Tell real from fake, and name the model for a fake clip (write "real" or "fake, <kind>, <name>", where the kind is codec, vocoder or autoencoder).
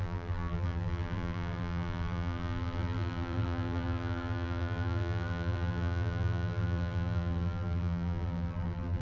fake, vocoder, BigVGAN v2